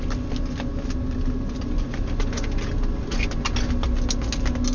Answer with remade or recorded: recorded